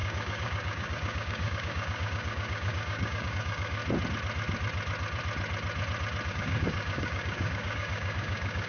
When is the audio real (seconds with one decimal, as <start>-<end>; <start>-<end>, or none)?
3.8-6.3